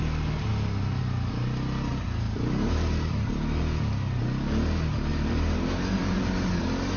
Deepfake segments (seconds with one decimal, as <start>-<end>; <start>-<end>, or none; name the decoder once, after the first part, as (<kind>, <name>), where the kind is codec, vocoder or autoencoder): 1.9-3.6 (vocoder, BigVGAN v2); 5.1-6.2